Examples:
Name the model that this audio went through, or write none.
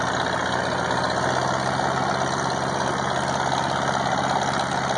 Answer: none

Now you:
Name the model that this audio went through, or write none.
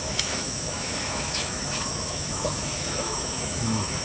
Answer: autoencoder, DAC-VAE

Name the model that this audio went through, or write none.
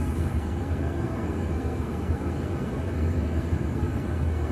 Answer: codec, SNAC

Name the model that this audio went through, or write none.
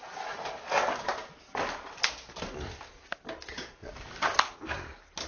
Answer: none